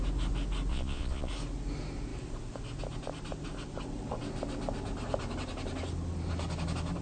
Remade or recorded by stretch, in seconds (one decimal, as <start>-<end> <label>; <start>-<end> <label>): 0.0-0.7 recorded; 0.7-1.3 remade; 1.3-7.0 recorded